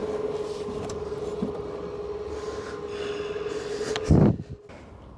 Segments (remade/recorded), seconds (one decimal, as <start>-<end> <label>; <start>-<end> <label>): 0.0-5.2 recorded